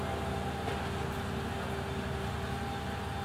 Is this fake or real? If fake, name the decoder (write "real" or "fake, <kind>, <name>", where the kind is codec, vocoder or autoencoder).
real